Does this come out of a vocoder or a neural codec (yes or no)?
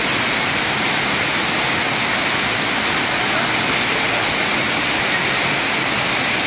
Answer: no